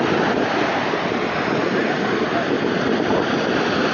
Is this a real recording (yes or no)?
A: yes